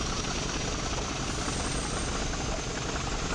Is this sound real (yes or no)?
yes